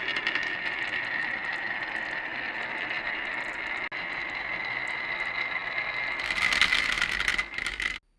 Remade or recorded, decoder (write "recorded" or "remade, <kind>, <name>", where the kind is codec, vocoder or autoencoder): recorded